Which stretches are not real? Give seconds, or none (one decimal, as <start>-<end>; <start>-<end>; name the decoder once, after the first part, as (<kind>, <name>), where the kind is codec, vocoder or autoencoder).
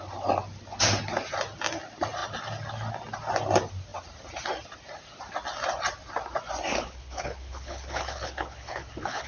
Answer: 6.7-9.3 (codec, HILCodec)